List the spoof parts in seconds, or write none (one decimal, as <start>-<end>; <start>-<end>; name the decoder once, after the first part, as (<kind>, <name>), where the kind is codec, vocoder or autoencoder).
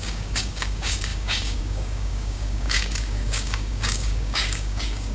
0.0-5.1 (codec, DAC)